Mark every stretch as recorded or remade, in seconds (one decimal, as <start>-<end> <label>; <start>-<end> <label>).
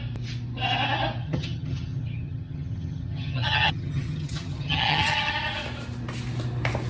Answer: 0.0-1.2 recorded; 1.2-5.3 remade; 5.3-6.9 recorded